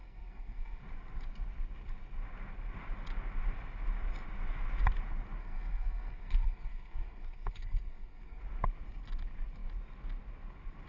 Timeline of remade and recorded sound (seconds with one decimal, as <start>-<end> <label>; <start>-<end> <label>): 0.0-0.8 remade; 0.8-5.4 recorded; 5.4-8.4 remade; 8.4-10.9 recorded